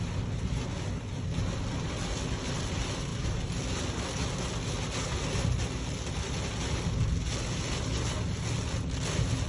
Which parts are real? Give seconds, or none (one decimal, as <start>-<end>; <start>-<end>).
0.0-9.5